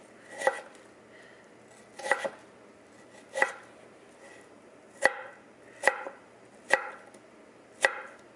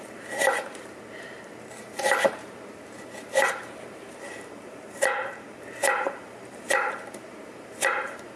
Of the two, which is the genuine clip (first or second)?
first